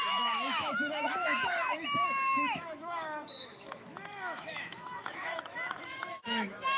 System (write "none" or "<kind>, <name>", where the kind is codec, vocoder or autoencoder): autoencoder, DAC-VAE